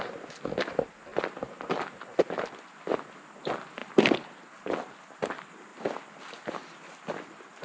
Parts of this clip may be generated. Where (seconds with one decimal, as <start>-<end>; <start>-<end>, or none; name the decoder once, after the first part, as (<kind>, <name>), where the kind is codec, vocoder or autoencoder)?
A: 1.1-2.6 (vocoder, BigVGAN v2); 3.8-4.9

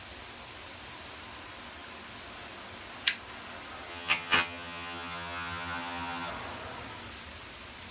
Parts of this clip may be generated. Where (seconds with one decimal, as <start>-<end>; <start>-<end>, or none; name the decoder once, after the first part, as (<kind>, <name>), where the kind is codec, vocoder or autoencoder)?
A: 3.9-6.3 (vocoder, HiFi-GAN)

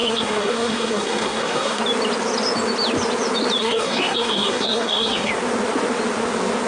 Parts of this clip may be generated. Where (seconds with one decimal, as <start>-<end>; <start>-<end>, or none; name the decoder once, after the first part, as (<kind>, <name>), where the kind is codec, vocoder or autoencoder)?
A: 0.0-1.8 (codec, SNAC); 3.6-5.3

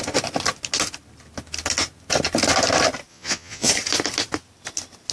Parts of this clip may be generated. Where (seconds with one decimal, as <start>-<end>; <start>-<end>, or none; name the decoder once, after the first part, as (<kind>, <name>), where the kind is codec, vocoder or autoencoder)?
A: 3.1-3.7 (vocoder, Vocos)

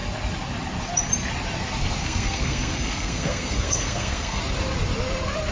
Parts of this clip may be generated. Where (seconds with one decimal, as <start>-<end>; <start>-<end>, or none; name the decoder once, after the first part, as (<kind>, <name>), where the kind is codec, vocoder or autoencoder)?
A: 2.0-4.4 (codec, SNAC)

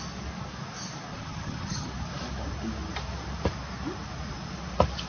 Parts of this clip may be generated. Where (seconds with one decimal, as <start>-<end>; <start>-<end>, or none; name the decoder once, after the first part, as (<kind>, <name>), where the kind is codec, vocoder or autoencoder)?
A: 1.1-1.9 (vocoder, HiFi-GAN)